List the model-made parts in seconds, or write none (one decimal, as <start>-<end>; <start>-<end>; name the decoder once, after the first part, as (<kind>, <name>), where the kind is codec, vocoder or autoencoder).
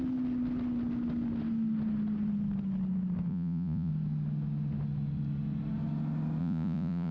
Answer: 3.3-3.9 (vocoder, Vocos); 6.4-7.1